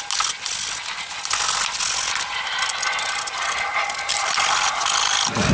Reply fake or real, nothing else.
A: real